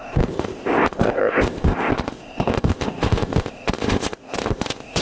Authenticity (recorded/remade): remade